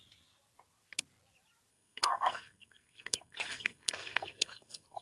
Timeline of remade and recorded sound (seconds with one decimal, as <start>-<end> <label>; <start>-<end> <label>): 0.0-1.7 recorded; 1.7-5.0 remade